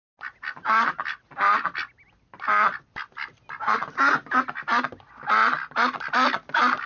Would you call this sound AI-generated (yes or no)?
no